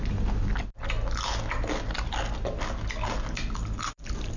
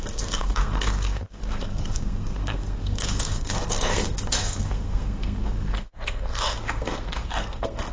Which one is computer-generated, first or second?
second